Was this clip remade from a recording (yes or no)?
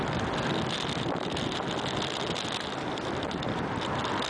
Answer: no